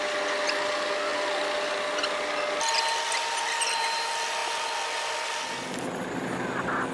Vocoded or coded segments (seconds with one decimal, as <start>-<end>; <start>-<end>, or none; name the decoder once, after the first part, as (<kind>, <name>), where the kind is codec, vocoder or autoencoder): none